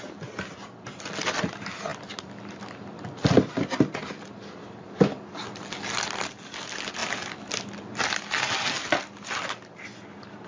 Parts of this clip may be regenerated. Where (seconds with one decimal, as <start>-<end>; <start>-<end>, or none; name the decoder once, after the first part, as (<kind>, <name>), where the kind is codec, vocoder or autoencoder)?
none